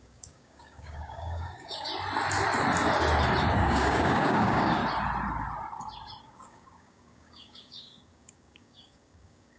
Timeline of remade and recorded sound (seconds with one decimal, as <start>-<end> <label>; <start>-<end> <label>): 0.0-1.9 remade; 1.9-3.5 recorded; 3.5-4.8 remade; 4.8-6.2 recorded; 6.2-9.6 remade